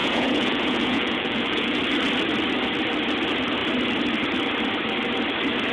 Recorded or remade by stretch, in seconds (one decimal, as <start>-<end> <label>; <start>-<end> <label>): 0.0-1.8 remade; 1.8-5.7 recorded